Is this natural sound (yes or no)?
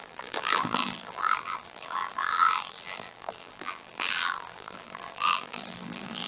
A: no